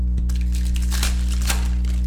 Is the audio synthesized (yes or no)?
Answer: yes